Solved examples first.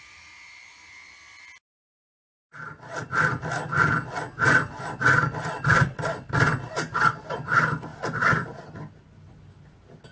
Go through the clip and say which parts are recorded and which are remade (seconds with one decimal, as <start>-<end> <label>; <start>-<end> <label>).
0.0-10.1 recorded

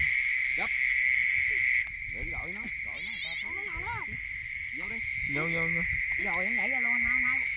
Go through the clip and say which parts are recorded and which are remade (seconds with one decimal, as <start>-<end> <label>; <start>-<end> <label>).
0.0-7.6 recorded

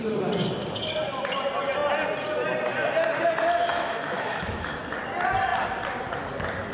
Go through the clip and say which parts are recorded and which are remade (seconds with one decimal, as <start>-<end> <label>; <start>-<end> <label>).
0.0-3.7 recorded; 3.7-4.7 remade; 4.7-6.7 recorded

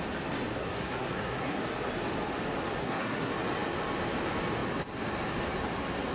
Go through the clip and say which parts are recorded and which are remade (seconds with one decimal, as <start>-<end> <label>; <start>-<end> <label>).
0.0-0.6 recorded; 0.6-1.6 remade; 1.6-2.8 recorded; 2.8-3.3 remade; 3.3-6.1 recorded

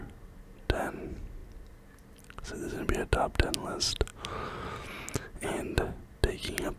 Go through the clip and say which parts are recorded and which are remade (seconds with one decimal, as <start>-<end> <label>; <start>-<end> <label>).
0.0-6.8 recorded

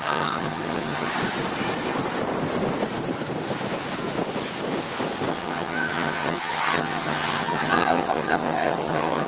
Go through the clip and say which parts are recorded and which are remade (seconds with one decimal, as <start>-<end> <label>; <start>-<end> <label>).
0.0-1.1 remade; 1.1-5.3 recorded; 5.3-9.3 remade

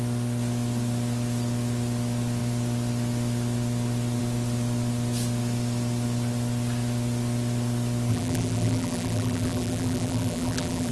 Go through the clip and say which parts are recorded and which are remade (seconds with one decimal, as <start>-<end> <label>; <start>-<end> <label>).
0.0-8.1 recorded; 8.1-10.9 remade